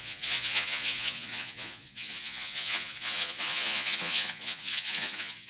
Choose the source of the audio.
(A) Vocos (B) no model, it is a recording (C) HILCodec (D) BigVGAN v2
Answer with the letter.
A